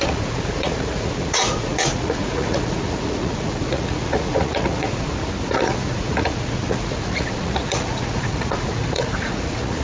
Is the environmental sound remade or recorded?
remade